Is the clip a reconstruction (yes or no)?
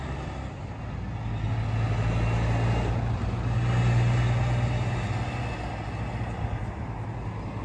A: no